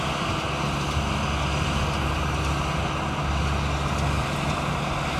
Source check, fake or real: real